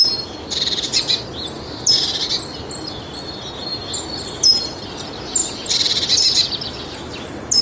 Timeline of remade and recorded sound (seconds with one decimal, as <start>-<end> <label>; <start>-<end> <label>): 0.0-7.6 recorded